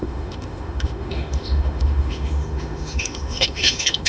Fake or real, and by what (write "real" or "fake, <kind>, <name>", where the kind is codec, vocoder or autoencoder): fake, autoencoder, DAC-VAE